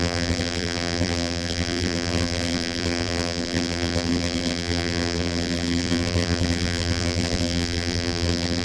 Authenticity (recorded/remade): remade